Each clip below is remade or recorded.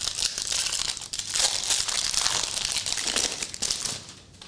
recorded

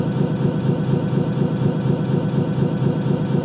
recorded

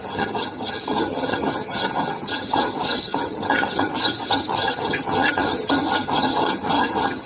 remade